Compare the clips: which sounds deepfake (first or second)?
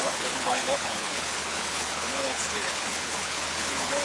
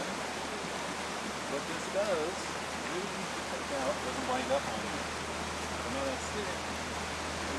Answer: first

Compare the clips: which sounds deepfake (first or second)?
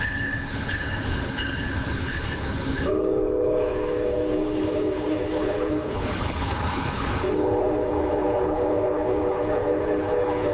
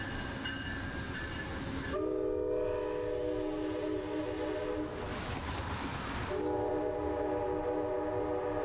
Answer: first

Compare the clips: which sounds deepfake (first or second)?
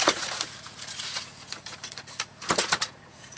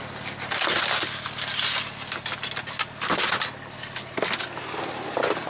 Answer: first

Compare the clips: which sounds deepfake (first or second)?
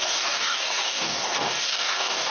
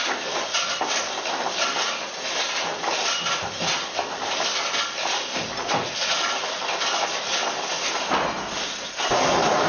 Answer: first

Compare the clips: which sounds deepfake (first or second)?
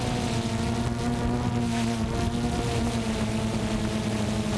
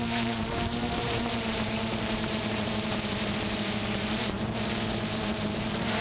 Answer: second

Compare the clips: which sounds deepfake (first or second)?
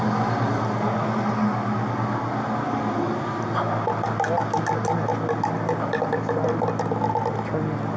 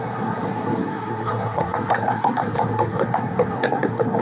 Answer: second